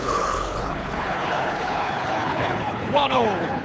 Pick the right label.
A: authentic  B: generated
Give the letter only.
B